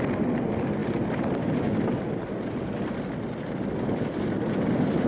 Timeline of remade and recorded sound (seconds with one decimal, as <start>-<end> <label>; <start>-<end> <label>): 0.0-5.1 recorded